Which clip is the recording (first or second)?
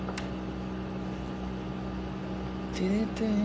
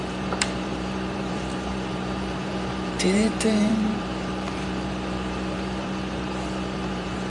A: first